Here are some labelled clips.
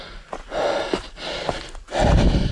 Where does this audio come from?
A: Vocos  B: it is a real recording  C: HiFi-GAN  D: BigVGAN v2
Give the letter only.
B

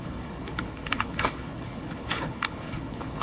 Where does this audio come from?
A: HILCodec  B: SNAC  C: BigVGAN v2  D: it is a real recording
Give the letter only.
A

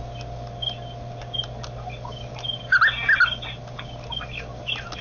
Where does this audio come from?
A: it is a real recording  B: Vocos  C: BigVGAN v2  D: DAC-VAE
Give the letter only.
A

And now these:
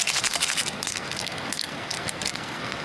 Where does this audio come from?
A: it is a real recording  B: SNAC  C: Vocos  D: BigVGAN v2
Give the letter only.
B